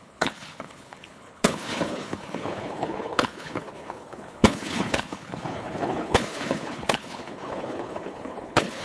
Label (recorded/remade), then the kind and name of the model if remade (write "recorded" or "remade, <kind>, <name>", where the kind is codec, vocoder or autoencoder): remade, codec, HILCodec